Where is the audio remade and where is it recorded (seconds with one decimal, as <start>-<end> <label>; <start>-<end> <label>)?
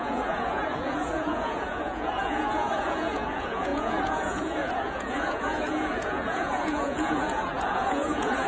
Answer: 0.0-8.5 remade